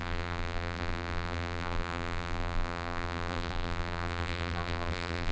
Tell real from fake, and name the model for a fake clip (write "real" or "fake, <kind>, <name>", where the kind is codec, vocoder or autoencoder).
fake, vocoder, BigVGAN v2